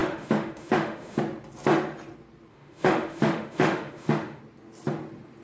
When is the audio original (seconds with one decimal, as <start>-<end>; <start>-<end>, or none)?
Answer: 1.2-2.5; 4.4-5.4